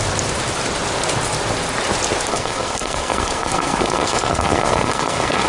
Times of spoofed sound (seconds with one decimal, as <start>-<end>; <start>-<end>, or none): 2.3-5.5